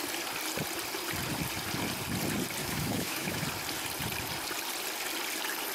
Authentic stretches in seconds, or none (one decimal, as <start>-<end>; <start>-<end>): 0.0-2.6; 3.4-5.7